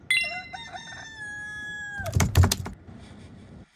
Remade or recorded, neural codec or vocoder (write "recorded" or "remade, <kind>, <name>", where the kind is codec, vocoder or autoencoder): recorded